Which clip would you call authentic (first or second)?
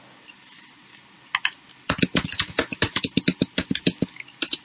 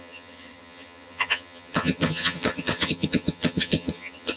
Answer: first